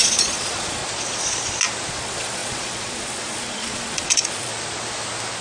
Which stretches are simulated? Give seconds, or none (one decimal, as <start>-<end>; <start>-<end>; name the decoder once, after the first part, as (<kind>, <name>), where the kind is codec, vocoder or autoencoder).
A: 0.0-0.8 (vocoder, Vocos); 1.9-4.5